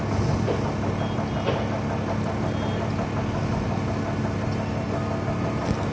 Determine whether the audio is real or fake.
real